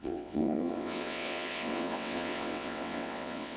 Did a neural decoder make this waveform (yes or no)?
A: yes